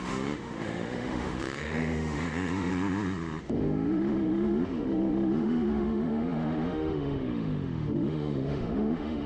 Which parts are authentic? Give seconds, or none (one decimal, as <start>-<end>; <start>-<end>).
2.7-3.4